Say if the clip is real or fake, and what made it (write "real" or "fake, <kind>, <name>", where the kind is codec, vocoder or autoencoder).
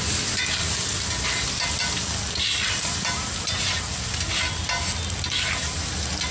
real